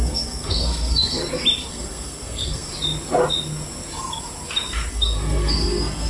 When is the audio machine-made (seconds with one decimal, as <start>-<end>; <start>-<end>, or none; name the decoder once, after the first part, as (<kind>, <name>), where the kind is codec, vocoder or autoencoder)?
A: 0.0-1.2 (codec, SNAC); 1.7-2.7; 4.9-6.1